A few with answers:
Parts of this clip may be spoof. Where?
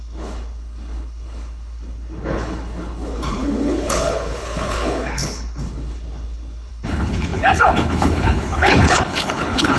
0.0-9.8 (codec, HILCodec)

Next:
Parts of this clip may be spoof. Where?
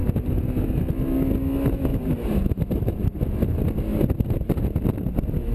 1.9-3.2 (vocoder, BigVGAN v2); 3.9-4.7